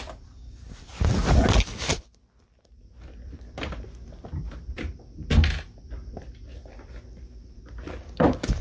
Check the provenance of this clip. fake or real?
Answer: fake